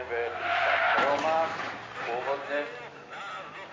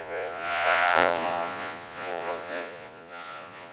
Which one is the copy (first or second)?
second